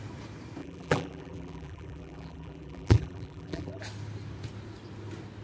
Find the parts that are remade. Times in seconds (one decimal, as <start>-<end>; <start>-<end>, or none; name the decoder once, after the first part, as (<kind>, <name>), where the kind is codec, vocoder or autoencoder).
0.6-3.8 (vocoder, BigVGAN v2)